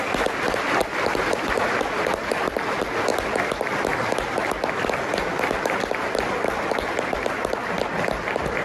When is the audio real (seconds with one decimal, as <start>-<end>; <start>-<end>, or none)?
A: 0.0-8.6